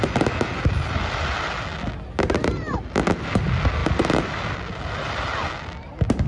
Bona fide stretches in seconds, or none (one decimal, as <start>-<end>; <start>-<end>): 0.0-6.3